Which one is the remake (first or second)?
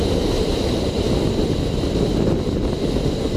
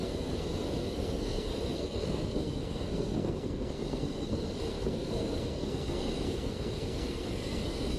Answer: second